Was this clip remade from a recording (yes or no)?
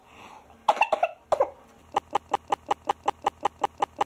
no